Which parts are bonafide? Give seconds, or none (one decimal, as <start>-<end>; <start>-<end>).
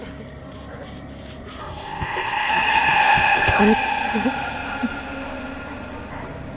0.0-1.6; 2.5-2.9; 3.6-6.6